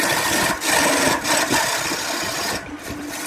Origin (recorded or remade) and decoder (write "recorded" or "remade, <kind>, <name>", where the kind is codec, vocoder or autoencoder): recorded